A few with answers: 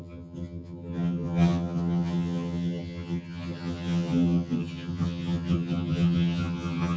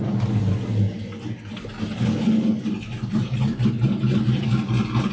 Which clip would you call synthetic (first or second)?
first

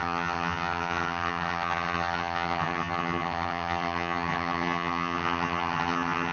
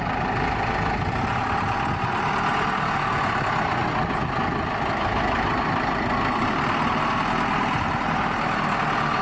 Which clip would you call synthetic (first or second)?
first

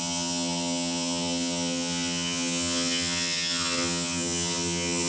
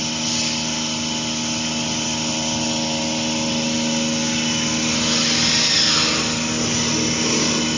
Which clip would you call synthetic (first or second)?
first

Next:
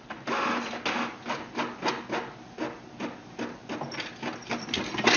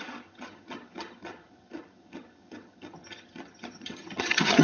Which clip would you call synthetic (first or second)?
second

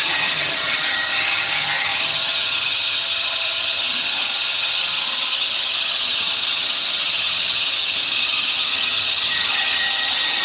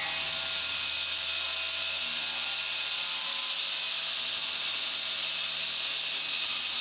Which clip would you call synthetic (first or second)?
first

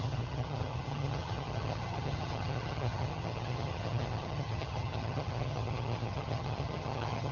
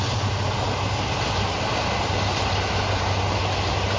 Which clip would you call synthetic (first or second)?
first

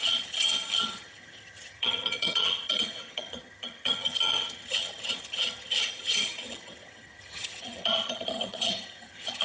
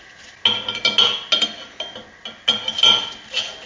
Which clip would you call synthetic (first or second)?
first